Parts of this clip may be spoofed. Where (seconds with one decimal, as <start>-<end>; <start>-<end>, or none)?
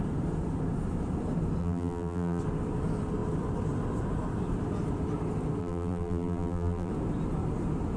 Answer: 1.6-2.4; 5.6-6.9